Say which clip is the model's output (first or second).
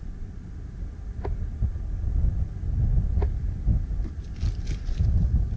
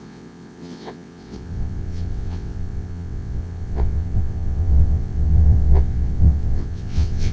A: second